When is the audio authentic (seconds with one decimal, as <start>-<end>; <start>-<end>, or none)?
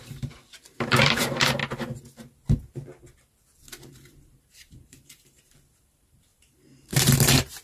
1.6-3.9